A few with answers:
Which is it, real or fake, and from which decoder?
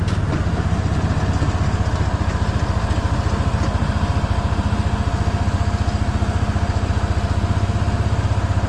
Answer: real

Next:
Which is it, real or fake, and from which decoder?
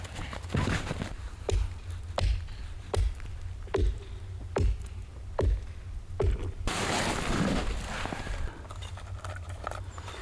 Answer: real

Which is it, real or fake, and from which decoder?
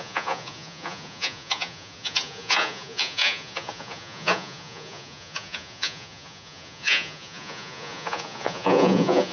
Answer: fake, vocoder, Vocos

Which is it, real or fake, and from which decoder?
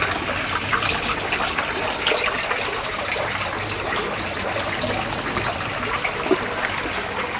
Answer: real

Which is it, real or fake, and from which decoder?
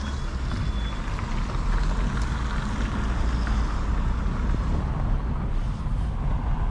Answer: real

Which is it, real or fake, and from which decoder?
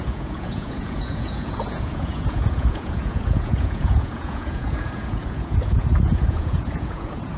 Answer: fake, vocoder, Vocos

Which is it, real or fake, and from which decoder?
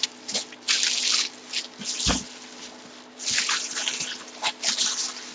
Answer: real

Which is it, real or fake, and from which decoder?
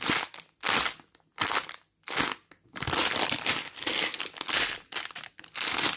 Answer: real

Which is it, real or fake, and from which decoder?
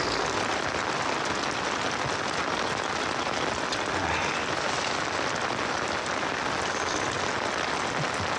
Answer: real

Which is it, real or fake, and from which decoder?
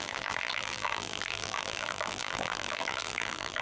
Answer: fake, vocoder, BigVGAN v2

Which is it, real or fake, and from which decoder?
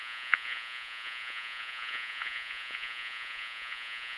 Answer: fake, vocoder, Vocos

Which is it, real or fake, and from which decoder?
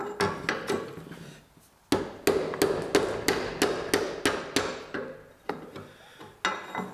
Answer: real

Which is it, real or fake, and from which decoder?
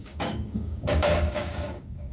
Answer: fake, codec, DAC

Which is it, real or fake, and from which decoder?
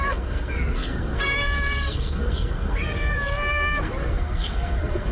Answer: fake, codec, SNAC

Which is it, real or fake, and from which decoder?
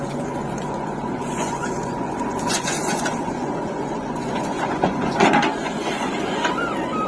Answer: fake, vocoder, Vocos